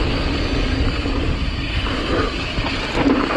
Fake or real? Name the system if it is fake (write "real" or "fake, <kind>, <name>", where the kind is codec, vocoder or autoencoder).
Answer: real